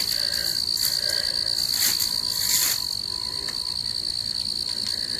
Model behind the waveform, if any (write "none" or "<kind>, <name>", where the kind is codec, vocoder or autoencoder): none